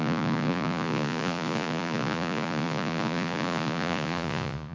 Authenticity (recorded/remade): remade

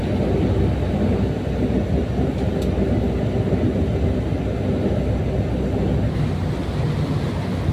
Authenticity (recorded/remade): recorded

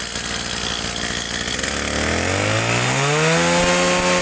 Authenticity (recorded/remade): recorded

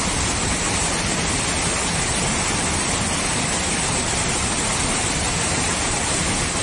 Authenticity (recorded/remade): recorded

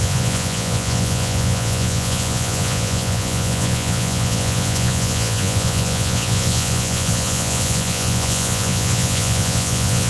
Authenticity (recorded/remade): remade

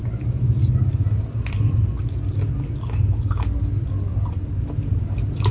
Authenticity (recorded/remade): recorded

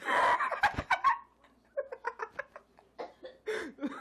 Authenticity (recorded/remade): recorded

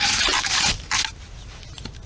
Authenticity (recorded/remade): recorded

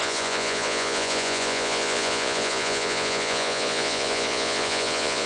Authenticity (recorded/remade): remade